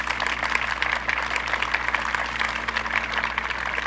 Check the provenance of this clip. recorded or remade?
recorded